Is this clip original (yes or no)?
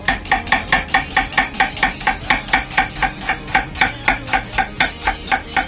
yes